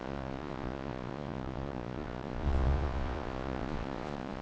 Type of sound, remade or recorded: remade